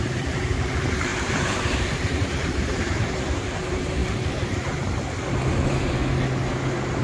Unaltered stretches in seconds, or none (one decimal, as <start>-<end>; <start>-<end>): 4.0-5.5; 6.0-7.0